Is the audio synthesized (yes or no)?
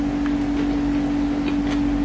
no